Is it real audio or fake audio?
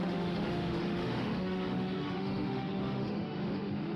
fake